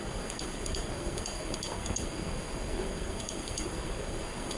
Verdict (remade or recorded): remade